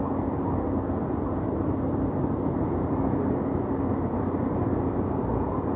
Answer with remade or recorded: recorded